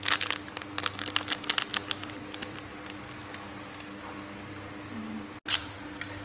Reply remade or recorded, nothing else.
recorded